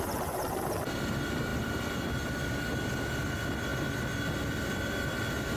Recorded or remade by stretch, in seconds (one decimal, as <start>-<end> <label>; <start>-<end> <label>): 0.0-3.7 remade; 3.7-4.6 recorded; 4.6-5.6 remade